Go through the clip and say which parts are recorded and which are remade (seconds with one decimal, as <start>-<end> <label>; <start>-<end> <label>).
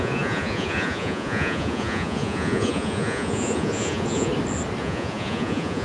0.0-4.3 remade; 4.3-4.8 recorded; 4.8-5.8 remade